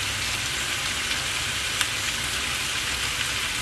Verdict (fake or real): real